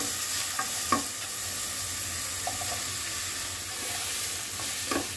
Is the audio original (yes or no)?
yes